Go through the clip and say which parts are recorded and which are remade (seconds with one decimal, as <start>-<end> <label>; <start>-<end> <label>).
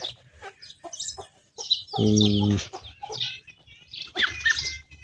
0.0-5.0 recorded